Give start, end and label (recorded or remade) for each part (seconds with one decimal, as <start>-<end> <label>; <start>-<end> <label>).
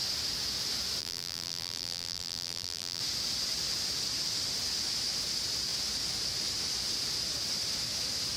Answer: 0.0-1.0 recorded; 1.0-3.0 remade; 3.0-8.4 recorded